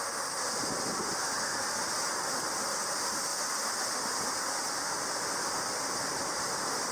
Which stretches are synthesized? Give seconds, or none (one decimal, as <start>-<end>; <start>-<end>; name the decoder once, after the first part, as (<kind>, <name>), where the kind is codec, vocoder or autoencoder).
none